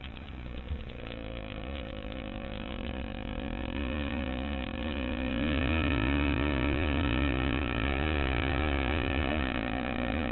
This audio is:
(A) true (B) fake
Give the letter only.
B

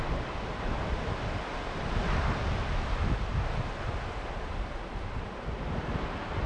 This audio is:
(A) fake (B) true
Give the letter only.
B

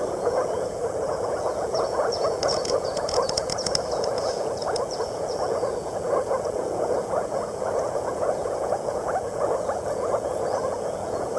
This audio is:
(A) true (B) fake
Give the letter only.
B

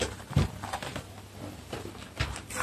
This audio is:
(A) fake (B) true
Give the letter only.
B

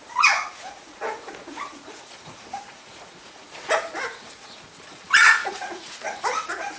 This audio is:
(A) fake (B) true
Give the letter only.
A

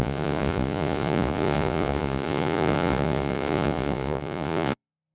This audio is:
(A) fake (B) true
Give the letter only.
A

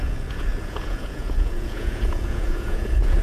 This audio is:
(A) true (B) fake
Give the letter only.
B